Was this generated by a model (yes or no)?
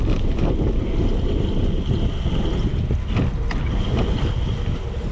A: no